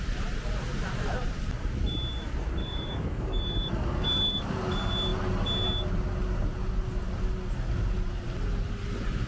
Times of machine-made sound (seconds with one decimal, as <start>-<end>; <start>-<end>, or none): 2.6-4.5